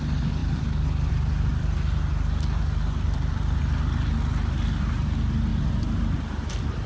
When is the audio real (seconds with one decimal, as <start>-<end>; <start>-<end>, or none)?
0.0-1.5; 3.6-5.5